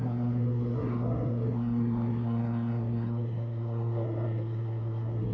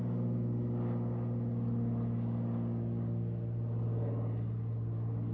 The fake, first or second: first